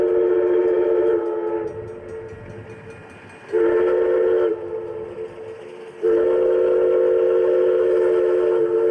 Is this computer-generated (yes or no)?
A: no